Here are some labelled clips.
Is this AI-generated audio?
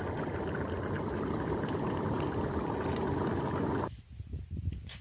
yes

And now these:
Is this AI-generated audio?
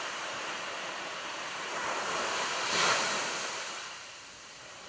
yes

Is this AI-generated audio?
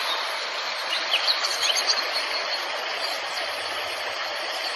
no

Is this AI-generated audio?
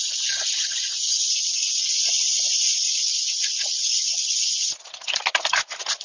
no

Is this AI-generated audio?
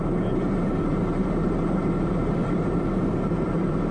yes